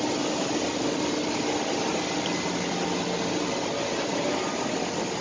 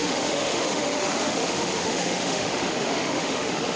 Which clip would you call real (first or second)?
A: first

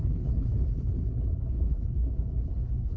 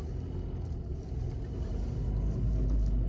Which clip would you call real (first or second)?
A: second